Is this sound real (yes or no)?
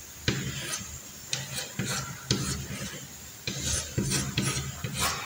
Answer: yes